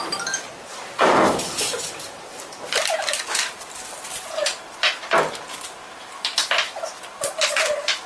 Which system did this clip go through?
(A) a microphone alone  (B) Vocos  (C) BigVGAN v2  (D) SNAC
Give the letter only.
A